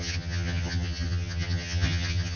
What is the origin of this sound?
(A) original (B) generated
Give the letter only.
B